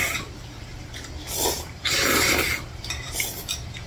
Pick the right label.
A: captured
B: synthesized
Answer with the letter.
B